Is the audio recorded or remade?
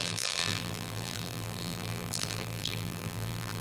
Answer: remade